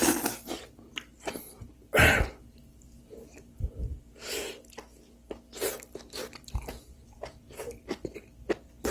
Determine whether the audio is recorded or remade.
recorded